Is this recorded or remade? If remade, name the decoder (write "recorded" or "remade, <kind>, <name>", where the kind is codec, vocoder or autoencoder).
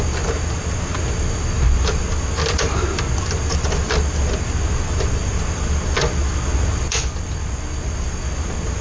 recorded